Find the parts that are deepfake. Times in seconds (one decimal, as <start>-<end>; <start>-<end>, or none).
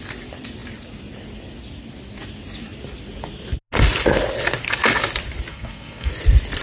5.5-6.1